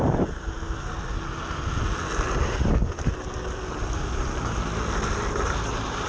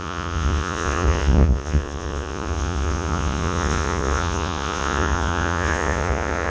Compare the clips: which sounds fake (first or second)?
second